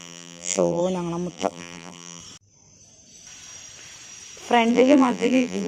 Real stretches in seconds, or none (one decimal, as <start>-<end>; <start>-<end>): 0.8-1.3; 2.2-4.7